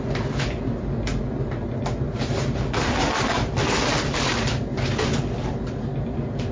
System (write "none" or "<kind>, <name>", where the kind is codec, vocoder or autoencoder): none